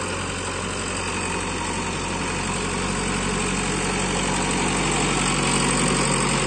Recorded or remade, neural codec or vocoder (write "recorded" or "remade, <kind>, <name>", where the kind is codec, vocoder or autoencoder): recorded